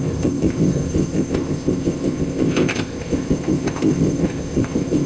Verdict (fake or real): fake